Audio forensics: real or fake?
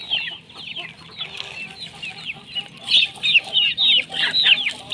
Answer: real